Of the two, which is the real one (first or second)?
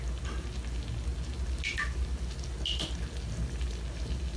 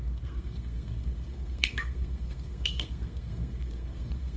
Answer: first